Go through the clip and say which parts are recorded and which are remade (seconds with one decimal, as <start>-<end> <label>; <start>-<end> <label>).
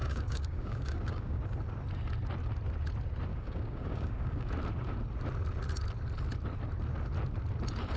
0.0-1.4 remade; 1.4-3.3 recorded; 3.3-4.5 remade; 4.5-8.0 recorded